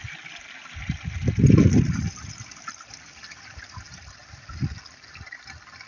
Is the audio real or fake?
real